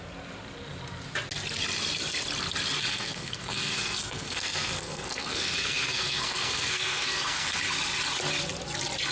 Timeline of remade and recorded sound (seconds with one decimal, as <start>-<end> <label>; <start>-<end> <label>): 0.0-2.9 recorded; 2.9-7.6 remade; 7.6-9.1 recorded